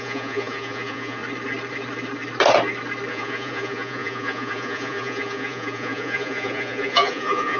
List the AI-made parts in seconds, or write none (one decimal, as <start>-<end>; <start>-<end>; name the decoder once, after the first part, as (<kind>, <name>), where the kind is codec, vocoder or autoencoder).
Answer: 0.0-1.2 (vocoder, Vocos); 3.1-7.6